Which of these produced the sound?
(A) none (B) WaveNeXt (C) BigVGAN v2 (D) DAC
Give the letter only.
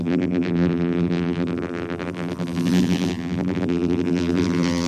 C